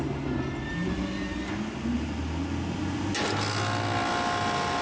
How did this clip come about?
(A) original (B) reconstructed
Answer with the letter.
A